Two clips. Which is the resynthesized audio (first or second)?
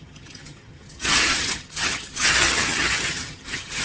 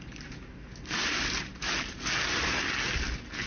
first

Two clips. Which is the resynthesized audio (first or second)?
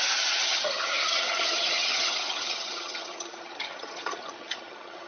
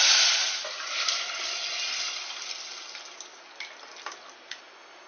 first